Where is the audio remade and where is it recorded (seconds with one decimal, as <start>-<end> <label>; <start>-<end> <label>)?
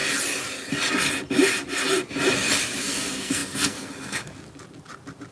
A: 0.0-2.8 recorded; 2.8-4.3 remade; 4.3-5.3 recorded